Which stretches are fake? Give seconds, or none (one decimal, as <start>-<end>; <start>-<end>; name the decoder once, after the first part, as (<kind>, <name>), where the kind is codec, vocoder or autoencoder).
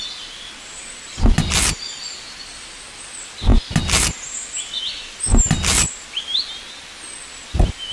none